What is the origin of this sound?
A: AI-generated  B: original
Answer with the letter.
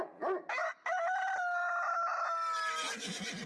B